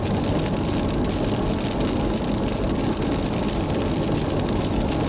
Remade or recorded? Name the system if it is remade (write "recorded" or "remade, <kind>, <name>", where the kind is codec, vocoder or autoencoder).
recorded